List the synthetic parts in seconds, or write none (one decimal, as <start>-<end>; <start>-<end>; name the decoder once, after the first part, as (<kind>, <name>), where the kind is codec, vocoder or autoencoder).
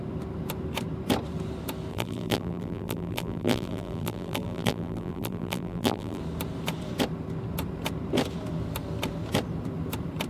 1.9-6.2 (vocoder, BigVGAN v2)